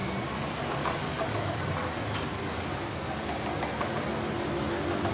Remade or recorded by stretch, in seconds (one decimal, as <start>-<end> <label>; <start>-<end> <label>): 0.0-0.6 recorded; 0.6-1.8 remade; 1.8-5.1 recorded